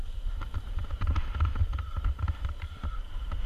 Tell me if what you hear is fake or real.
fake